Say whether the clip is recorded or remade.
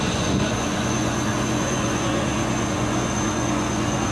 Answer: remade